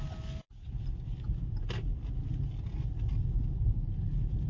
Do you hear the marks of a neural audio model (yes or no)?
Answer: no